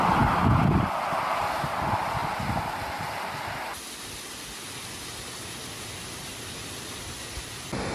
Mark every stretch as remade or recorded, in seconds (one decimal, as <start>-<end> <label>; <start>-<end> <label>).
0.0-7.9 recorded